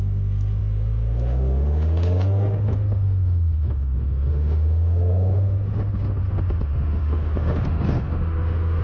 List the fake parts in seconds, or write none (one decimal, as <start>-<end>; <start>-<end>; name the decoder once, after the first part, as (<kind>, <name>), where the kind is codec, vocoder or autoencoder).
0.0-8.8 (autoencoder, DAC-VAE)